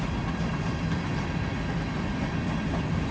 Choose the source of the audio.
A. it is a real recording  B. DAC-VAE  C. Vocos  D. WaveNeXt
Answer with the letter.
A